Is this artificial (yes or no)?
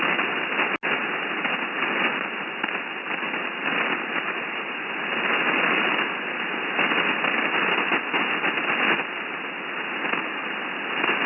no